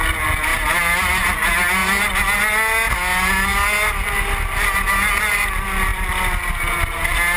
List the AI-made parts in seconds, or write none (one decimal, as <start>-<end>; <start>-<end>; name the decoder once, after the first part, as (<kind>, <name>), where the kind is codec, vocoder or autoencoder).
0.5-1.3 (vocoder, BigVGAN v2)